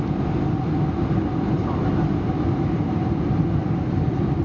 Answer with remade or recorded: recorded